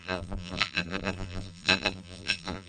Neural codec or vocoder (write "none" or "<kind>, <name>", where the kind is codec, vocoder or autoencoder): vocoder, BigVGAN v2